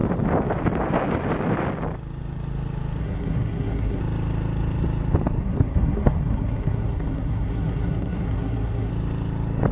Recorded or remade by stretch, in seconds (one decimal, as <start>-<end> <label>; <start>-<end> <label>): 0.0-3.0 recorded; 3.0-4.0 remade; 4.0-5.4 recorded; 5.4-8.9 remade; 8.9-9.7 recorded